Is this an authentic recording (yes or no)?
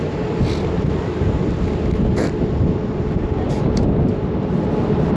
yes